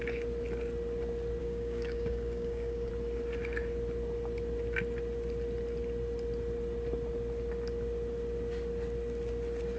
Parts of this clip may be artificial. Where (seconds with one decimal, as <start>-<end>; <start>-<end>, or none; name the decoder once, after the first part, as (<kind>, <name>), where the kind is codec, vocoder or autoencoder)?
1.4-2.9 (codec, DAC)